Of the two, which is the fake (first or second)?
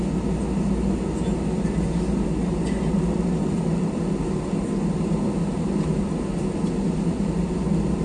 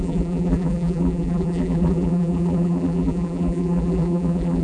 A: second